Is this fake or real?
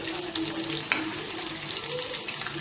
real